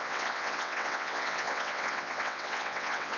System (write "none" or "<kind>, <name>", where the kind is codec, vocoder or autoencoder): vocoder, WaveNeXt